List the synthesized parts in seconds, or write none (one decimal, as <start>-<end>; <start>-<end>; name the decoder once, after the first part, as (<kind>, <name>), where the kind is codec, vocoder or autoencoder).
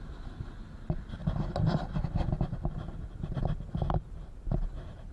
none